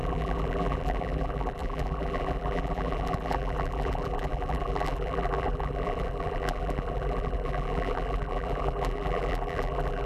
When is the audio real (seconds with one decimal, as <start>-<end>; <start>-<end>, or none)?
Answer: none